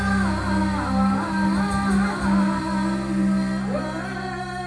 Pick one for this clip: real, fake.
real